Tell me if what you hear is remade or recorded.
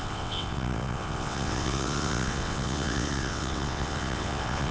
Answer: remade